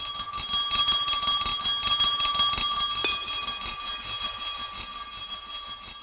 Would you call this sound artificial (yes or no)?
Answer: no